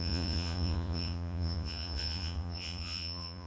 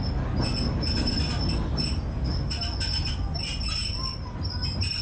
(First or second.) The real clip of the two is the second